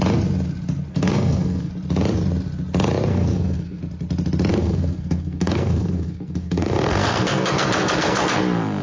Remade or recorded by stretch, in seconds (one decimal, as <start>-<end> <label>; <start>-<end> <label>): 0.0-0.9 recorded; 0.9-1.7 remade; 1.7-3.1 recorded; 3.1-3.8 remade; 3.8-4.5 recorded; 4.5-8.4 remade; 8.4-8.8 recorded

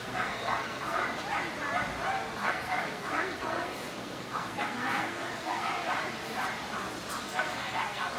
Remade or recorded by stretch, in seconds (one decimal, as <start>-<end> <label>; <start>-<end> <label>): 0.0-1.0 remade; 1.0-2.4 recorded; 2.4-5.7 remade; 5.7-7.2 recorded; 7.2-8.2 remade

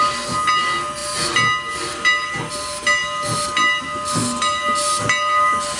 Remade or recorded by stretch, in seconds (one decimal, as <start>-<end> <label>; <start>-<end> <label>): 0.0-5.8 recorded

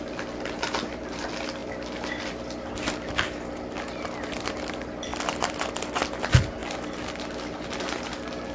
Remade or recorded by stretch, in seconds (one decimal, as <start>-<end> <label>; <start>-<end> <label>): 0.0-8.5 recorded

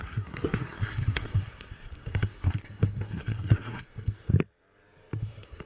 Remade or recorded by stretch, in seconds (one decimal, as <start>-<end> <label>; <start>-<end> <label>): 0.0-4.3 remade; 4.3-5.2 recorded; 5.2-5.7 remade

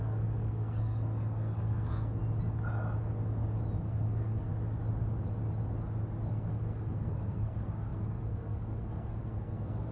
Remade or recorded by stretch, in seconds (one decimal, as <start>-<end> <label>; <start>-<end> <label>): 0.0-2.2 remade; 2.2-3.8 recorded; 3.8-4.5 remade; 4.5-6.3 recorded; 6.3-9.9 remade

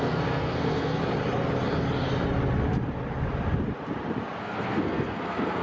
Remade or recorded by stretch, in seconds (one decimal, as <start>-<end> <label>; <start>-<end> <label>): 0.0-1.0 remade; 1.0-4.4 recorded; 4.4-5.6 remade

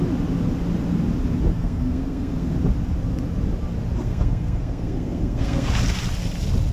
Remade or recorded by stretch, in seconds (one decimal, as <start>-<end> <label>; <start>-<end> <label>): 0.0-1.5 recorded; 1.5-2.5 remade; 2.5-4.0 recorded; 4.0-5.7 remade; 5.7-6.7 recorded